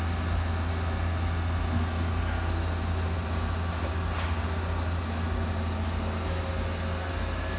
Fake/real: real